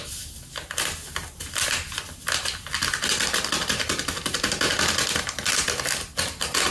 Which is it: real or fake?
real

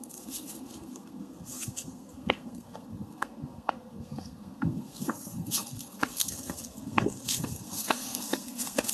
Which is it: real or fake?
fake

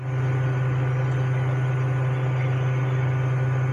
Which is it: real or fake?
real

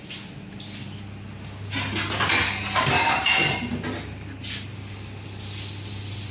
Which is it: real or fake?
real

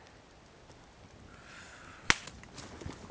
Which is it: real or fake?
real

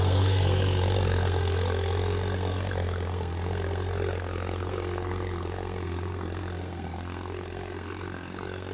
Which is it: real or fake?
fake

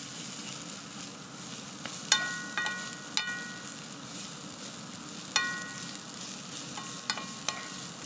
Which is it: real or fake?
real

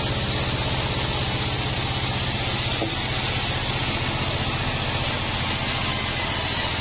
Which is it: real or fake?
real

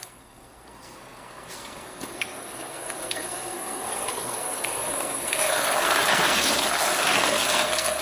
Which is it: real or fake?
fake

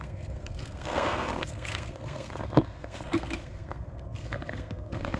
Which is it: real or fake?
fake